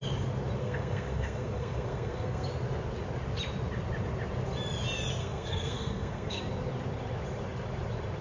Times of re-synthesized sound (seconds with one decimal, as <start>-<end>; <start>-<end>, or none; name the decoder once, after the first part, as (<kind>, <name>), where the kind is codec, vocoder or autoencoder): 0.6-2.5 (codec, SNAC); 5.2-6.4